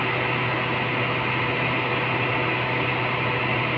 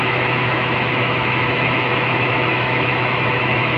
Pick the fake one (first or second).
second